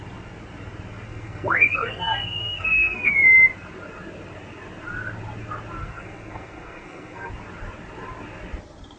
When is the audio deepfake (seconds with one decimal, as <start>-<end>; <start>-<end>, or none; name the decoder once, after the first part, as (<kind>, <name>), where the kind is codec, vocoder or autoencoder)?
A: 1.1-3.1 (codec, SNAC); 5.8-7.3